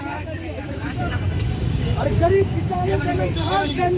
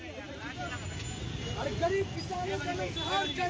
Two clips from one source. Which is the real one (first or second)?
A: second